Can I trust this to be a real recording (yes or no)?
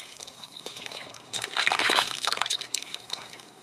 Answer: no